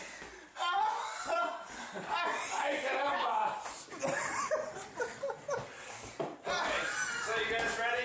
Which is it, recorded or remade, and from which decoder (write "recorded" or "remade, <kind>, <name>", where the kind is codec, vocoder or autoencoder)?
recorded